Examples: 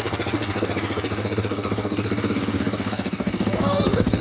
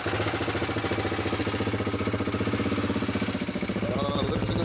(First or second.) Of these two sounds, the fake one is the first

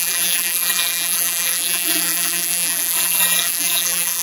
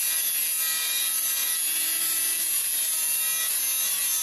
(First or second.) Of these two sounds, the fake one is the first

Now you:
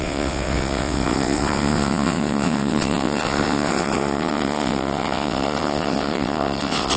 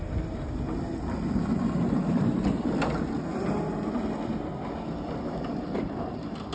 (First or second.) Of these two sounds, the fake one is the first